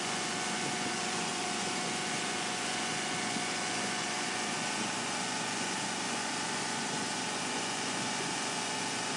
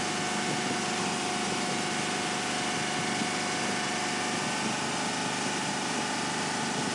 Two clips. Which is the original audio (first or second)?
second